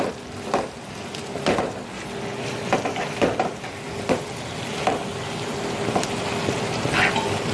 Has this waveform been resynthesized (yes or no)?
no